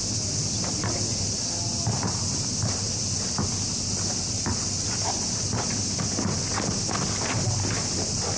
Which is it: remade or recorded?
recorded